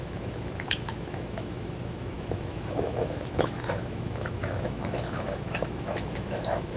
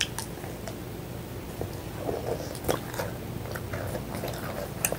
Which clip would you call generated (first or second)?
first